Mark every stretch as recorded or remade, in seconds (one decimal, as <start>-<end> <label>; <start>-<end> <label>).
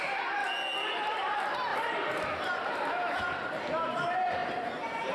0.0-0.4 remade; 0.4-0.9 recorded; 0.9-1.7 remade; 1.7-2.7 recorded; 2.7-5.1 remade